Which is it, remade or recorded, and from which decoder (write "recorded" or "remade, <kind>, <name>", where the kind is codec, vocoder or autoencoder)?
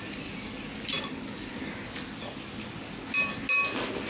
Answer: recorded